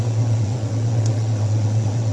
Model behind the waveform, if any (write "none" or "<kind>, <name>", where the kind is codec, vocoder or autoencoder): vocoder, WaveNeXt